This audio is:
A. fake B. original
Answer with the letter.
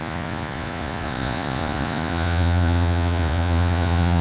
A